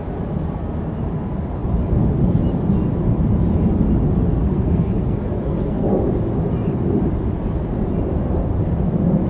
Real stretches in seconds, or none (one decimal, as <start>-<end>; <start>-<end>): 0.0-4.4; 6.0-9.3